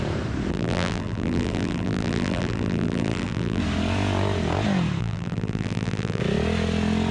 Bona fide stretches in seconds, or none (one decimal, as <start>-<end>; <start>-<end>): 0.0-0.5; 3.6-5.0; 6.2-7.1